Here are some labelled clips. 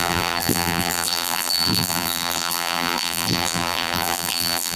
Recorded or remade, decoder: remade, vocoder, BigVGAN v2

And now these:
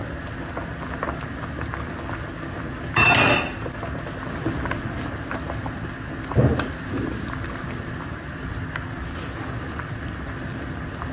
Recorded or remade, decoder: recorded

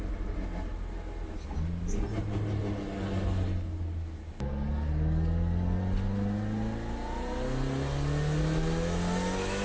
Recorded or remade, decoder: recorded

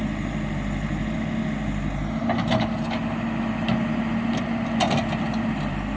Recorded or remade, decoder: recorded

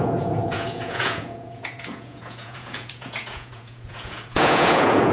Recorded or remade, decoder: remade, vocoder, Vocos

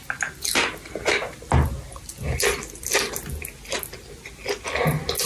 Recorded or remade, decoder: recorded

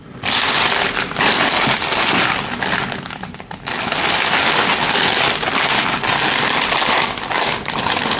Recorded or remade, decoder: recorded